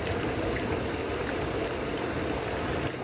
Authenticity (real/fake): real